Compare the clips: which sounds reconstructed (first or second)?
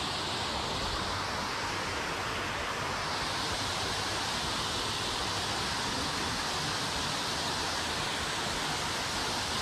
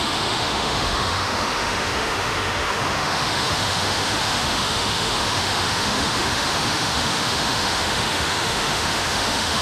second